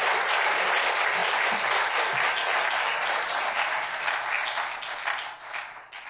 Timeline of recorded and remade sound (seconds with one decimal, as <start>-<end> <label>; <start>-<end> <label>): 0.0-6.1 recorded